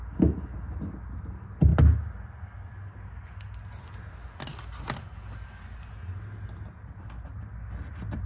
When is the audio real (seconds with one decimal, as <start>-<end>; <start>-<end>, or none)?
0.0-8.3